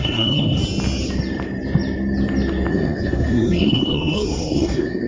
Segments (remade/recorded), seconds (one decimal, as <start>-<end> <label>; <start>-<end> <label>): 0.0-0.6 remade; 0.6-2.7 recorded; 2.7-5.1 remade